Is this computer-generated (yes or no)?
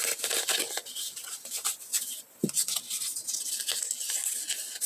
no